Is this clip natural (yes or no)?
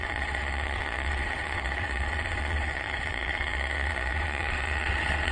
no